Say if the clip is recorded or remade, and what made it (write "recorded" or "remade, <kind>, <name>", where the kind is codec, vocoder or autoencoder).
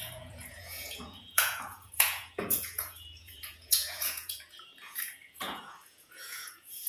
remade, vocoder, Vocos